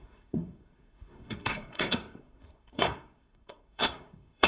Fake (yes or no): yes